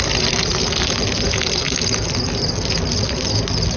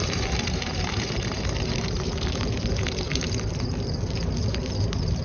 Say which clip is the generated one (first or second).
second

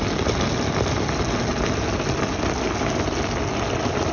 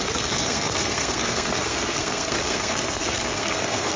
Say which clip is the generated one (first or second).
second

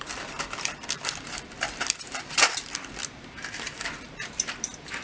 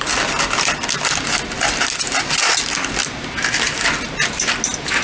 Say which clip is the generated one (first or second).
first